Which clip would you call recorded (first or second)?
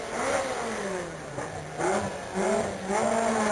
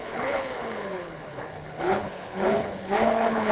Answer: first